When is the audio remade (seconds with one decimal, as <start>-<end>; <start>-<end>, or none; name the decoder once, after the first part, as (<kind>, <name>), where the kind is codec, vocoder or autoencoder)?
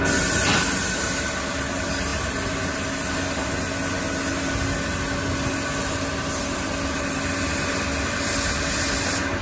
none